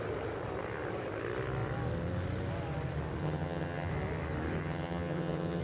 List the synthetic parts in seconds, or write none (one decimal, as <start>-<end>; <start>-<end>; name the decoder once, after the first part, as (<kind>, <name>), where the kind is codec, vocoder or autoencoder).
3.2-3.9 (vocoder, HiFi-GAN); 4.6-5.6

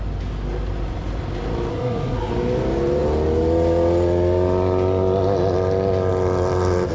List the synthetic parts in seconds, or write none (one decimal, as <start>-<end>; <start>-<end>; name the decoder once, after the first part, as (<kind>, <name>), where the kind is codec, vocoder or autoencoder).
1.7-2.3 (codec, SNAC)

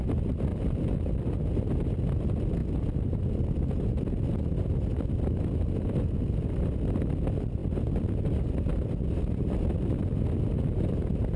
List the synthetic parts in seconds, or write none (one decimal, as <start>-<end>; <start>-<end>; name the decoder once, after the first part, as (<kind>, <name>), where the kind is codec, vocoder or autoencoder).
0.5-1.5 (vocoder, BigVGAN v2); 2.6-3.3